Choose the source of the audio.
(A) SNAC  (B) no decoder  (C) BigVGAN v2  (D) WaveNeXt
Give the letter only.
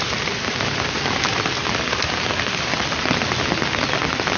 B